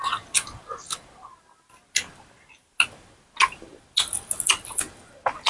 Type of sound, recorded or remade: recorded